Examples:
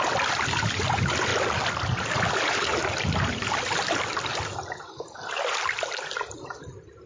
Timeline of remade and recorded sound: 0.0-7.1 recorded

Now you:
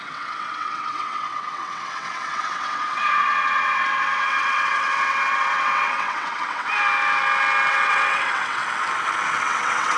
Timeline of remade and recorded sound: 0.0-6.7 remade; 6.7-7.7 recorded; 7.7-8.6 remade; 8.6-9.4 recorded; 9.4-10.0 remade

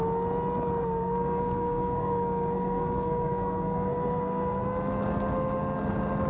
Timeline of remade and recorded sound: 0.0-0.8 recorded; 0.8-4.6 remade; 4.6-6.3 recorded

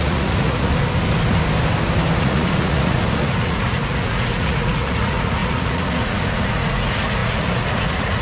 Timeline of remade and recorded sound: 0.0-0.7 remade; 0.7-2.2 recorded; 2.2-8.2 remade

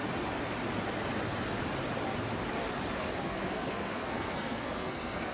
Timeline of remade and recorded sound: 0.0-3.2 recorded; 3.2-5.3 remade

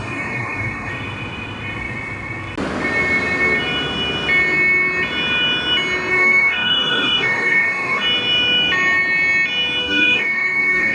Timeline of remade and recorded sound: 0.0-0.9 remade; 0.9-6.1 recorded; 6.1-8.0 remade; 8.0-9.8 recorded; 9.8-10.9 remade

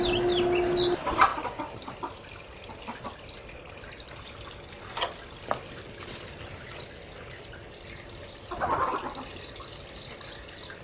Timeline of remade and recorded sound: 0.0-10.8 recorded

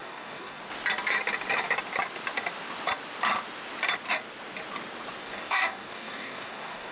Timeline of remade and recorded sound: 0.0-0.6 remade; 0.6-5.2 recorded; 5.2-6.9 remade